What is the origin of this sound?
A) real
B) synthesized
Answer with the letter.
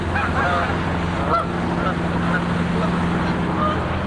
A